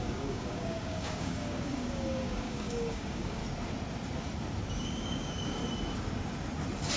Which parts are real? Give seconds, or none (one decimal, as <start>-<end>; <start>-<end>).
3.4-4.7; 5.6-7.0